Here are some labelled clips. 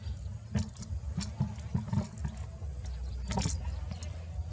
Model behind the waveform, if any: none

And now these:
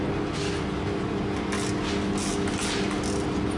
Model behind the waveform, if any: none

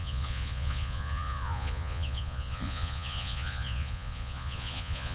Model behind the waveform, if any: vocoder, Vocos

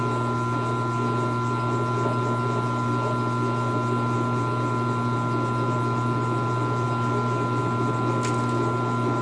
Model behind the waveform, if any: none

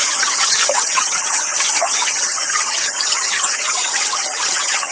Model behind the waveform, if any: vocoder, HiFi-GAN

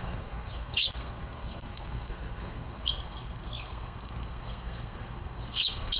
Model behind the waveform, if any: codec, SNAC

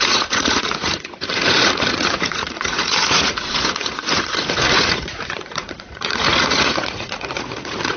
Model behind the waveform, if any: vocoder, Vocos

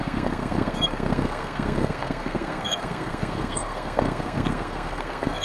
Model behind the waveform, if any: codec, SNAC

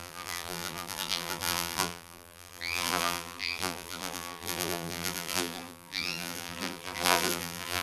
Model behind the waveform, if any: vocoder, BigVGAN v2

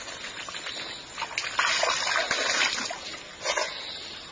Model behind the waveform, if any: none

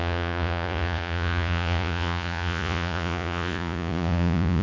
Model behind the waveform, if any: vocoder, Vocos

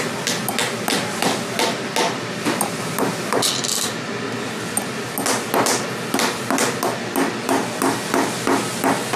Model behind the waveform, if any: none